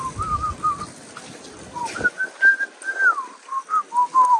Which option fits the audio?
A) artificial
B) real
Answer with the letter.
B